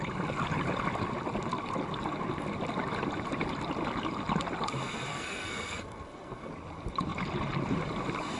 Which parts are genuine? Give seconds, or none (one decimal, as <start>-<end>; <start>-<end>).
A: 0.0-5.1; 6.5-8.4